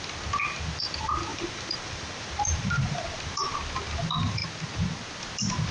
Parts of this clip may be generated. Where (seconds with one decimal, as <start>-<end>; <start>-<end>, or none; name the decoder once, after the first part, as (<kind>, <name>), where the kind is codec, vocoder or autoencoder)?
1.3-3.6 (vocoder, BigVGAN v2)